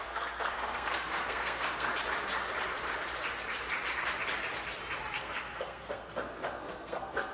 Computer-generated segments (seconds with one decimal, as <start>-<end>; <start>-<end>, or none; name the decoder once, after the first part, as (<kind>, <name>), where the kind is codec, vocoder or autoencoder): 0.0-1.9 (codec, SNAC); 5.2-7.3